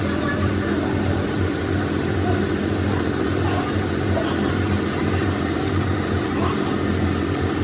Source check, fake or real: real